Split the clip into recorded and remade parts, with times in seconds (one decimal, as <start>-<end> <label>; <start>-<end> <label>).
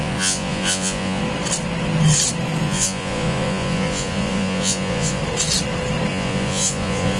0.0-1.2 remade; 1.2-2.6 recorded; 2.6-5.2 remade; 5.2-6.1 recorded; 6.1-7.2 remade